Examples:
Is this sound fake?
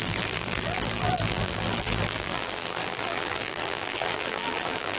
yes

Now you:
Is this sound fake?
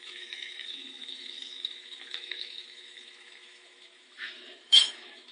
yes